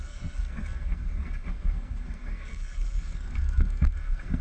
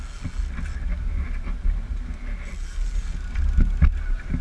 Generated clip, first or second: first